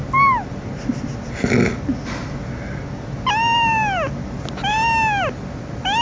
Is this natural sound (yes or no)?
yes